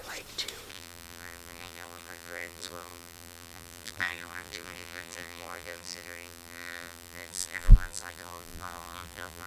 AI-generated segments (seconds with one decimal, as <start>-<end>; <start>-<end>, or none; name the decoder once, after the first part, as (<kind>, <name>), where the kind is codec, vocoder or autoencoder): 0.7-9.5 (vocoder, BigVGAN v2)